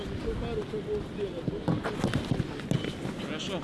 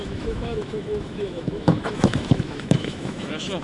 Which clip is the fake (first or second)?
second